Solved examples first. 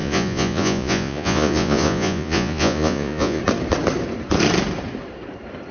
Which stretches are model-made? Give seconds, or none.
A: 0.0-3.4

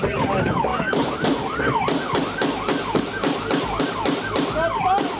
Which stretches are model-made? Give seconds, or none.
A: none

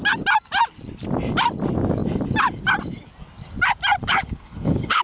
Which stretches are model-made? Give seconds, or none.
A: 4.0-5.0